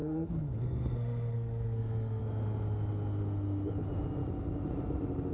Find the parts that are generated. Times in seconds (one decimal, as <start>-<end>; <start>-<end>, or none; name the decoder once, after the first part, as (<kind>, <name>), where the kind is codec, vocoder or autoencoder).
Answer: 0.0-2.2 (codec, SNAC)